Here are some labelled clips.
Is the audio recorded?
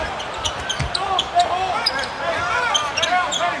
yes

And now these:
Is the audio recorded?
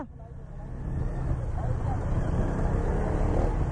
yes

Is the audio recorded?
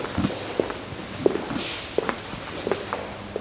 yes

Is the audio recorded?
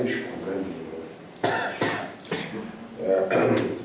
yes